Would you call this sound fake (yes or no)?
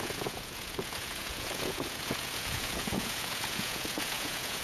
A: yes